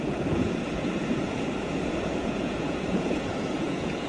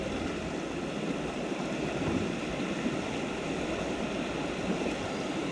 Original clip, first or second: second